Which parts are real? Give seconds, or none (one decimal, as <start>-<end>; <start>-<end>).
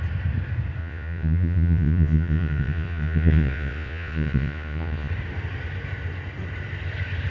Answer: 0.0-0.8; 5.1-7.3